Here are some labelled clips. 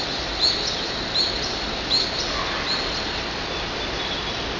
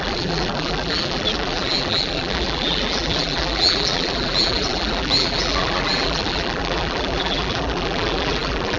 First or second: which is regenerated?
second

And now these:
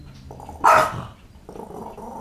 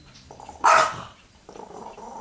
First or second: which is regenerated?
second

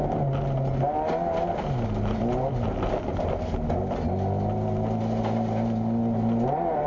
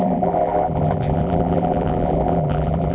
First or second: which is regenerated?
second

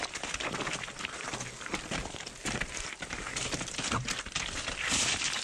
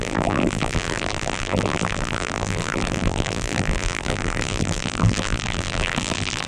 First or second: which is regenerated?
second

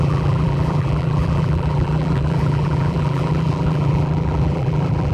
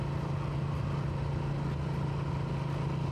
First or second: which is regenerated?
first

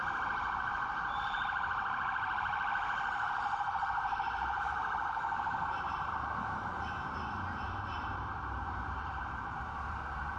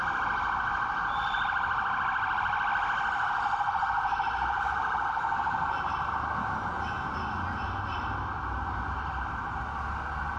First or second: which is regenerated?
first